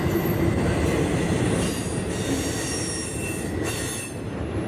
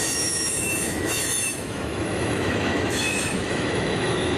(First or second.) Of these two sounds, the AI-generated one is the second